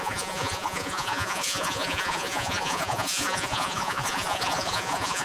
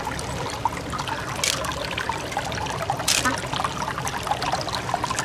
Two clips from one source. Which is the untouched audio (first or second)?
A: second